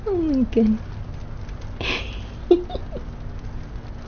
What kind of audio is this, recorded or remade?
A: recorded